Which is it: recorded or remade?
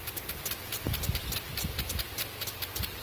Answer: recorded